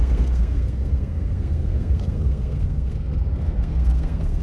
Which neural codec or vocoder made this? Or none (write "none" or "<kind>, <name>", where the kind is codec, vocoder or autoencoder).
codec, SNAC